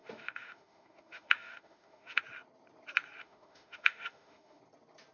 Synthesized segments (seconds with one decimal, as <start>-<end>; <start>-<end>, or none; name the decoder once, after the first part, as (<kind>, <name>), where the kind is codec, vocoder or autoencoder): 0.0-2.2 (autoencoder, DAC-VAE); 3.2-4.6